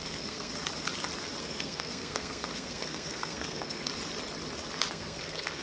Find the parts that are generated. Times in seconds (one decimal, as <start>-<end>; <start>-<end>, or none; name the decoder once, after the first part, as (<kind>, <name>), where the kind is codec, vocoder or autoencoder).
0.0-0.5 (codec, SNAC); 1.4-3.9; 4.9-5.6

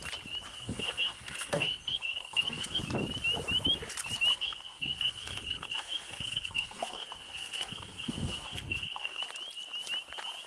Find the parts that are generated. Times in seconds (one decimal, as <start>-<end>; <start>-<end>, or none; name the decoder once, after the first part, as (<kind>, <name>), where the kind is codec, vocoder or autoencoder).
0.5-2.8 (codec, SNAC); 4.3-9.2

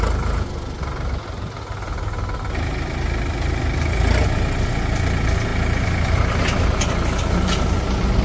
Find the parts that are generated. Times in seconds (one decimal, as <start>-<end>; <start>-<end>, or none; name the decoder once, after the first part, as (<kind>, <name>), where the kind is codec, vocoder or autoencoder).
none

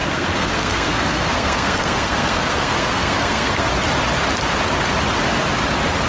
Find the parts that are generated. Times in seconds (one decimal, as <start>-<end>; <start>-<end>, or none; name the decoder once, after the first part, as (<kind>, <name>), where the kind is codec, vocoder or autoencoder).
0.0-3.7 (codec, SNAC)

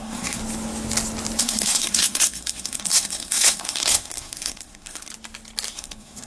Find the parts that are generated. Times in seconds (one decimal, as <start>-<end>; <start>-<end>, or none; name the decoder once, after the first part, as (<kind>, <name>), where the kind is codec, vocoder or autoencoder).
0.0-0.4 (codec, SNAC); 1.4-5.1; 5.7-6.3